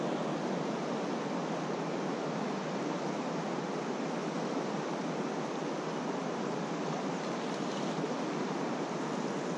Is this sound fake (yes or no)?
no